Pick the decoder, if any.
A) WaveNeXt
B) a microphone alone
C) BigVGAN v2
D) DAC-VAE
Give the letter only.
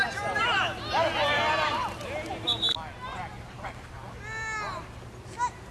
B